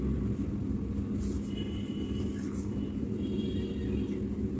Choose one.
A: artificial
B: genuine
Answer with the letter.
B